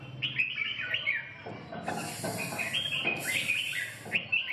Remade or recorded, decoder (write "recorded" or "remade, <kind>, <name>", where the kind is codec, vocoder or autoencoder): recorded